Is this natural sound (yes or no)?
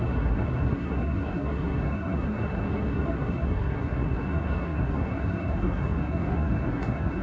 no